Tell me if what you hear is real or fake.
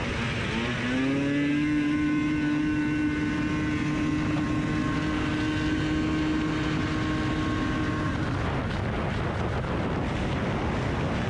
real